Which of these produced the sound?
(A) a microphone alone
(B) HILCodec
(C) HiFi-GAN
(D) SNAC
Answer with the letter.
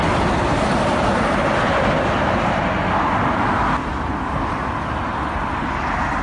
A